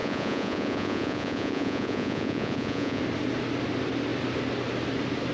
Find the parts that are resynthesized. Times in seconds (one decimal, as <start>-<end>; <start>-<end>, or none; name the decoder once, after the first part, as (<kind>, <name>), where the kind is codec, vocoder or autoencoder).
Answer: 0.0-3.0 (vocoder, Vocos)